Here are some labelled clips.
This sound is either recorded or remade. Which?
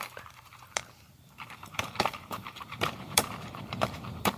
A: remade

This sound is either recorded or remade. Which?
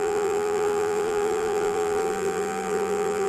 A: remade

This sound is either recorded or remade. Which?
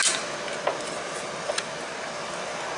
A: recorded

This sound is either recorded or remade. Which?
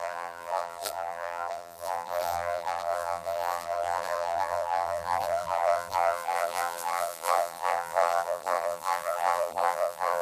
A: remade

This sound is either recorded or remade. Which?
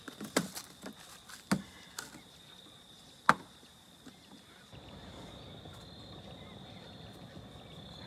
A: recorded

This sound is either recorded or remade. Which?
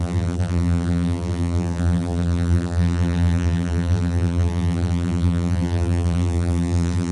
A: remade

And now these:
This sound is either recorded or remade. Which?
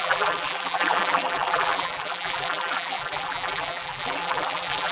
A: remade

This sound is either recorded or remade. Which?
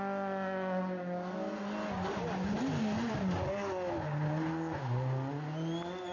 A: recorded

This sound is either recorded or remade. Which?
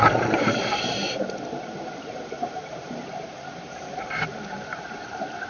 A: remade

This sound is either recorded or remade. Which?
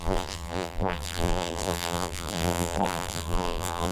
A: remade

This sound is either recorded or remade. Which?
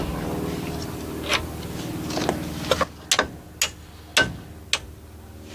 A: recorded